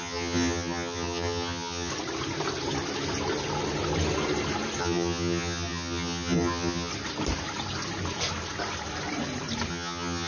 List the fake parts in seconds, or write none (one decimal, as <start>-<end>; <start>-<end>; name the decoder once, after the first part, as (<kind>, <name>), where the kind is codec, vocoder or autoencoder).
0.0-1.9 (vocoder, HiFi-GAN); 4.8-6.9; 9.7-10.3